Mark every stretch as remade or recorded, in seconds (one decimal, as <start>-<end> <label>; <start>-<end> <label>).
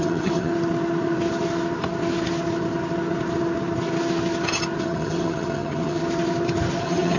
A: 0.0-0.5 remade; 0.5-4.8 recorded; 4.8-6.0 remade; 6.0-6.8 recorded; 6.8-7.2 remade